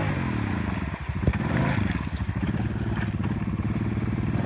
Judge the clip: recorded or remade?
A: recorded